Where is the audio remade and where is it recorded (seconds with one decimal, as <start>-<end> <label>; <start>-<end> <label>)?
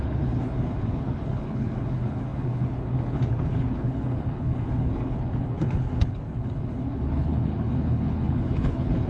0.0-9.1 remade